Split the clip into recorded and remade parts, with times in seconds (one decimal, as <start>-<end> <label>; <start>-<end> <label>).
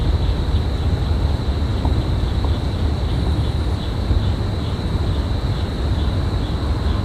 0.0-0.6 remade; 0.6-7.0 recorded